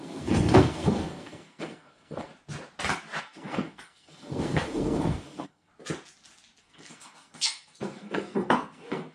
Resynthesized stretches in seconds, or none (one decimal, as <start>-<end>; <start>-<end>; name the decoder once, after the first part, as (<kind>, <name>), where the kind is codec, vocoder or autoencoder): 0.0-2.3 (codec, SNAC); 3.2-5.7; 6.6-9.1